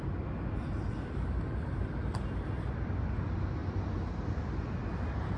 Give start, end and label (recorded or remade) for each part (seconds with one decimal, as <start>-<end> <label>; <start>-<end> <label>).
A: 0.0-5.4 recorded